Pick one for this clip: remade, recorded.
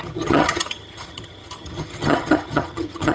remade